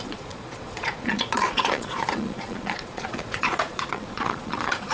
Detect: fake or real fake